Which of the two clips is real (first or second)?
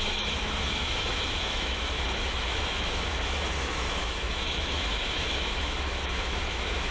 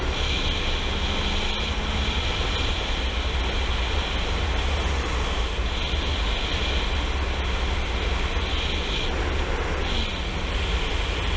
second